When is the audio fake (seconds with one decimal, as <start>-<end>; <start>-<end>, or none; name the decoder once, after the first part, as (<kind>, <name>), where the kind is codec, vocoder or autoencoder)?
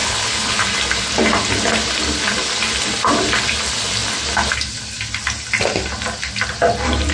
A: 0.0-0.6 (codec, HILCodec)